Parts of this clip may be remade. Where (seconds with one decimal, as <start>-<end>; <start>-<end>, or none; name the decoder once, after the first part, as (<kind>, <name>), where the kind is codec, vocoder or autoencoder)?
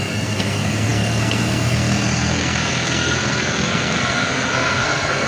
0.0-5.3 (codec, SNAC)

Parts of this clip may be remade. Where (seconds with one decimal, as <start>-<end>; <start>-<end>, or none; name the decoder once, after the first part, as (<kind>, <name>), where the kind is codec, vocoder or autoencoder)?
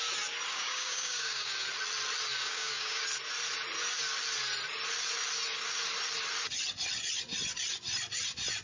0.5-1.5 (codec, DAC); 2.4-3.0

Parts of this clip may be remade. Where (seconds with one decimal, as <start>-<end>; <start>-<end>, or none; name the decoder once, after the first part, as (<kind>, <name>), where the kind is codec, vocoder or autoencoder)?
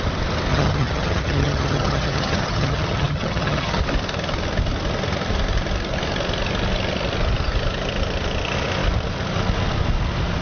0.5-3.8 (vocoder, HiFi-GAN)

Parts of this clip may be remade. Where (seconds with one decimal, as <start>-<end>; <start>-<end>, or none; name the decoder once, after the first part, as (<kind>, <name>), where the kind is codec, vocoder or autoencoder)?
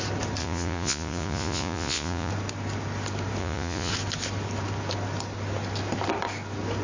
0.4-2.3 (vocoder, Vocos); 3.4-3.9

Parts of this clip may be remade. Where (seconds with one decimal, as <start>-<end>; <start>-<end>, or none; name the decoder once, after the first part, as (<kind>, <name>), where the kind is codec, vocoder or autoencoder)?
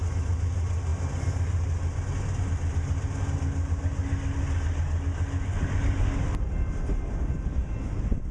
none